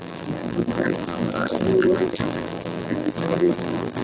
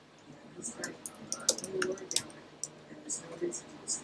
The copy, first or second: first